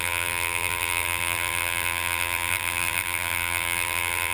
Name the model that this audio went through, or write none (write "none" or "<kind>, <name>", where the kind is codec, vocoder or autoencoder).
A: vocoder, BigVGAN v2